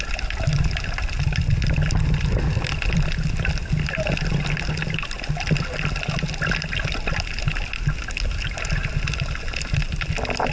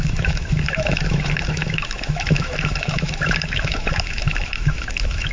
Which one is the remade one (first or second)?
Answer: second